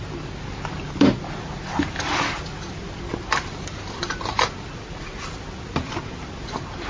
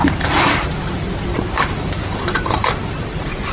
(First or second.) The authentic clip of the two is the first